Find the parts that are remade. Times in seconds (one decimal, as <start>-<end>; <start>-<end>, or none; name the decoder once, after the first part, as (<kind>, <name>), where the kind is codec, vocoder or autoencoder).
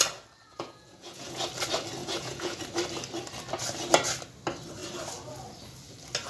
0.5-1.4 (vocoder, Vocos); 2.0-2.6